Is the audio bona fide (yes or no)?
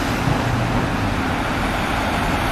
yes